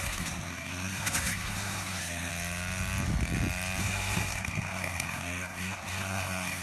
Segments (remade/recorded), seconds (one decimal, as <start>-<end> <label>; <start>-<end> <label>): 0.0-2.3 remade; 2.3-3.8 recorded; 3.8-6.6 remade